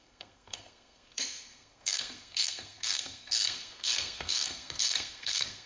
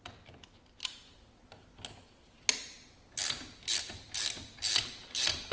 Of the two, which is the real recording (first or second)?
second